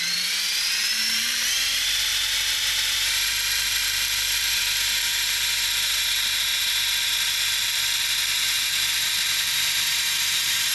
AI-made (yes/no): yes